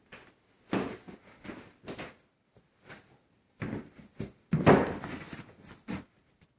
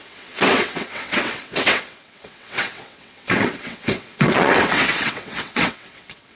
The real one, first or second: first